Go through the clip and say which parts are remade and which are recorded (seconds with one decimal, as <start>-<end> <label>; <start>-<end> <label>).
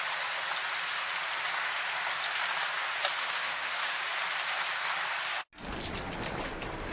0.0-3.2 recorded; 3.2-4.0 remade; 4.0-6.9 recorded